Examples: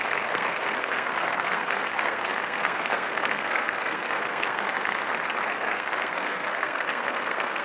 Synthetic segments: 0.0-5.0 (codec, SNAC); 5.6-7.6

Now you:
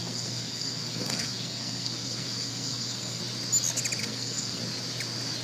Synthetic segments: 0.0-3.2 (codec, SNAC); 4.0-4.6

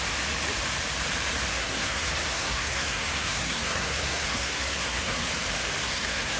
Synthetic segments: 1.5-5.3 (codec, SNAC); 5.8-6.4

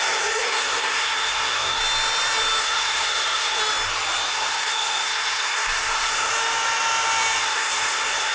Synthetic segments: 0.0-1.8 (codec, SNAC); 2.6-3.6; 4.3-6.3; 7.4-8.3

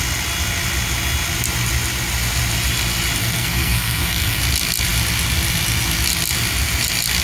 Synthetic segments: 3.2-4.4 (codec, SNAC)

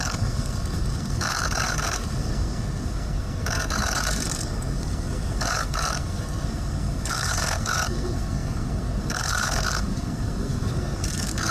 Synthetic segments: 0.0-11.5 (codec, SNAC)

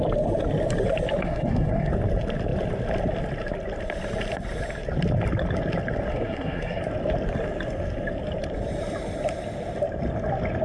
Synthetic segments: 1.2-1.9 (codec, SNAC); 6.1-6.8

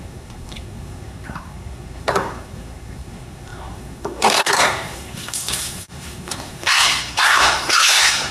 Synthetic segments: 0.0-8.3 (codec, SNAC)